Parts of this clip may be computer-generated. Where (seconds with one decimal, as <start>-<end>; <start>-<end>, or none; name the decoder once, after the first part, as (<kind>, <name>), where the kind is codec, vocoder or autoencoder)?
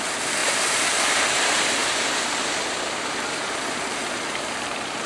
0.4-1.2 (vocoder, BigVGAN v2); 1.8-4.5